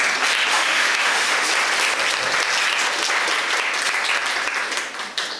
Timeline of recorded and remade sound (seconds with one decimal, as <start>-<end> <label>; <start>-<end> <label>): 0.0-0.5 recorded; 0.5-1.5 remade; 1.5-5.4 recorded